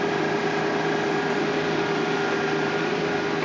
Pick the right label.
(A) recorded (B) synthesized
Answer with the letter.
A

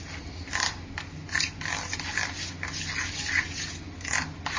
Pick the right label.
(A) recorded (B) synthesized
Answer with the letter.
A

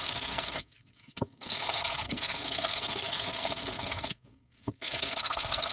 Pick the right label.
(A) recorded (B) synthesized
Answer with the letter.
B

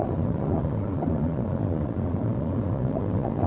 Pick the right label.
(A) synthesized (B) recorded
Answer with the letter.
A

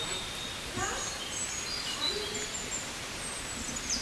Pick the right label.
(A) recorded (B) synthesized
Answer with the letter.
A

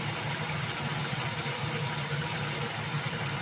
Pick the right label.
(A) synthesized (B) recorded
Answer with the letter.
B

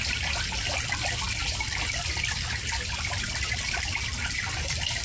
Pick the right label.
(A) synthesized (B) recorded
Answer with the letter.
B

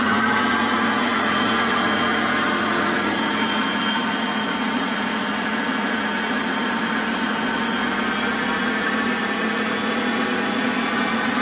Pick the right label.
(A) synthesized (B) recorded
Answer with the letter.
A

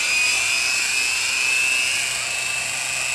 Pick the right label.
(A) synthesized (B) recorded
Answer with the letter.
B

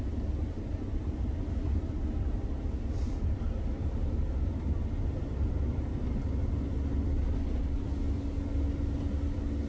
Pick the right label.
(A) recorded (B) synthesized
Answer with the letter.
A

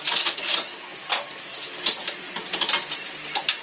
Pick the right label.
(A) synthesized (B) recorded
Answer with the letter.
B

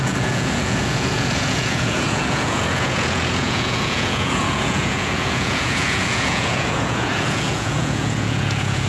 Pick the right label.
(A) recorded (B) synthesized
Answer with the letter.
B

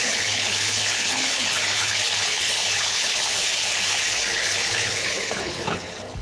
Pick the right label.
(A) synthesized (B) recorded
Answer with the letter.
A